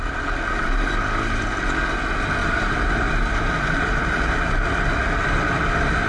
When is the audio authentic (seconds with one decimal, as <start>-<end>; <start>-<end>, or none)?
0.0-2.4; 4.5-6.1